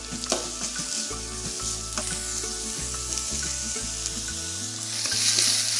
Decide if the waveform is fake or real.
real